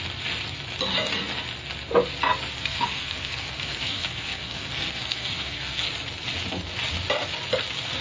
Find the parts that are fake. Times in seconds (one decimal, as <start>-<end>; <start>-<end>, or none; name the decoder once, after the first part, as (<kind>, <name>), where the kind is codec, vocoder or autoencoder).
2.5-5.9 (codec, SNAC)